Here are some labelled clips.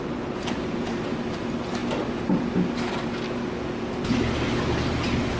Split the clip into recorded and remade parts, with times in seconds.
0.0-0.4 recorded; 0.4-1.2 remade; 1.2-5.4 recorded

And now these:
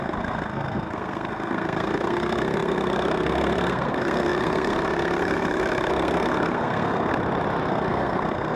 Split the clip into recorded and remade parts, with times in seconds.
0.0-7.1 remade; 7.1-7.7 recorded; 7.7-8.6 remade

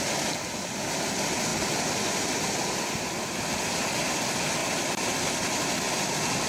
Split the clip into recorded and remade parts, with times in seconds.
0.0-6.5 recorded

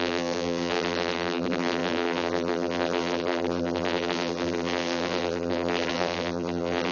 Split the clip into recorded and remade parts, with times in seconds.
0.0-6.9 remade

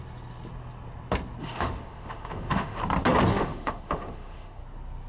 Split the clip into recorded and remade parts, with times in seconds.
0.0-1.4 recorded; 1.4-2.8 remade; 2.8-3.3 recorded; 3.3-4.6 remade; 4.6-5.1 recorded

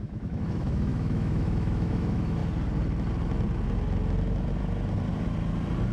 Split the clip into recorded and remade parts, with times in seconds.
0.0-2.4 remade; 2.4-5.9 recorded

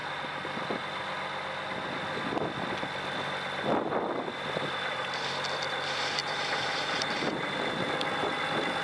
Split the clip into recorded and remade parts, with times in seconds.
0.0-6.2 recorded; 6.2-7.2 remade; 7.2-8.8 recorded

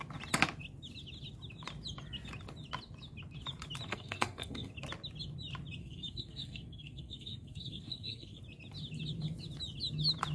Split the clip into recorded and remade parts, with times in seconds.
0.0-3.9 recorded; 3.9-4.7 remade; 4.7-5.8 recorded; 5.8-8.4 remade; 8.4-10.3 recorded